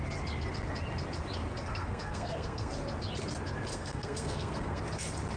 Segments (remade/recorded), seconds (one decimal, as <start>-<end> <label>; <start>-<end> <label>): 0.0-1.7 recorded; 1.7-2.7 remade; 2.7-3.7 recorded; 3.7-4.8 remade; 4.8-5.4 recorded